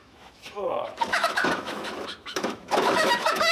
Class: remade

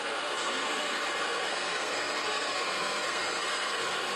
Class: remade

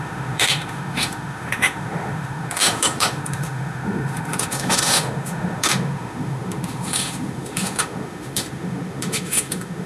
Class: remade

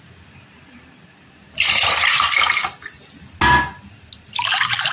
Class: recorded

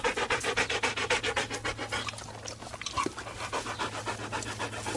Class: recorded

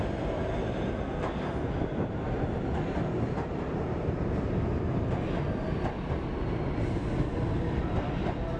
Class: recorded